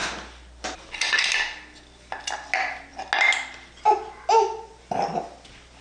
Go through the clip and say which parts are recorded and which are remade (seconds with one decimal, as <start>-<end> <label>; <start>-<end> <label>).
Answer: 0.0-5.8 recorded